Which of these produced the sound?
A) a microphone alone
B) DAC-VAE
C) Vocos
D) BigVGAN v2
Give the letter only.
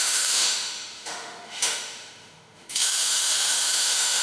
B